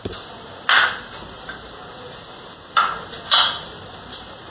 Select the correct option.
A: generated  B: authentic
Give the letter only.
A